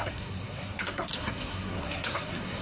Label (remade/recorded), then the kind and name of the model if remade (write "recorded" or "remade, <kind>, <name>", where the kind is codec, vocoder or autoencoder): remade, codec, SNAC